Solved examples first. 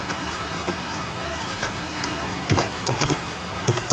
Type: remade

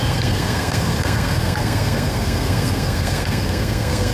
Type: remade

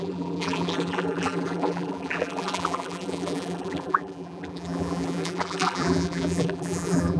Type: remade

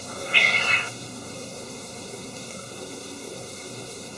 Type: remade